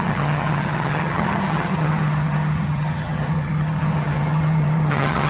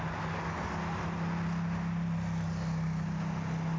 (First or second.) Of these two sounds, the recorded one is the second